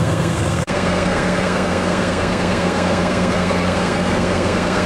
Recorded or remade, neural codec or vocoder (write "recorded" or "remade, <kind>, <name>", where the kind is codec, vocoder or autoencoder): remade, codec, SNAC